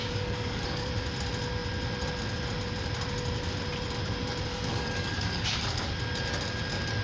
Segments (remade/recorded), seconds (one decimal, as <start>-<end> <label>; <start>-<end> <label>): 0.0-0.9 remade; 0.9-4.5 recorded; 4.5-5.9 remade; 5.9-7.0 recorded